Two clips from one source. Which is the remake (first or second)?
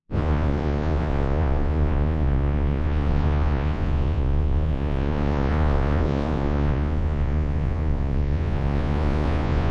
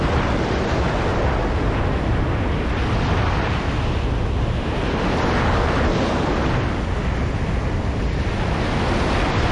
first